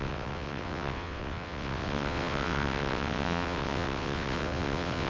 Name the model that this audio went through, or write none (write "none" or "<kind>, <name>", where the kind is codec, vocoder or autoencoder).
vocoder, WaveNeXt